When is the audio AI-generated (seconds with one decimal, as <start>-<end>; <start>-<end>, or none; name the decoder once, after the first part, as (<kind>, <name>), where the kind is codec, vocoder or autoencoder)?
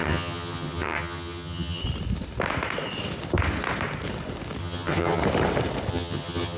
0.0-1.8 (vocoder, HiFi-GAN); 4.6-5.2; 5.9-6.6